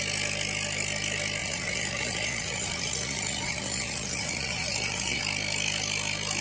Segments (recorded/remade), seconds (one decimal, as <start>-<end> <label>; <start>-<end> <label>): 0.0-1.4 recorded; 1.4-5.2 remade; 5.2-6.4 recorded